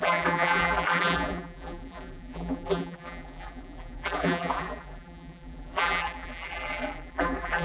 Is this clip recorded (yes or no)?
no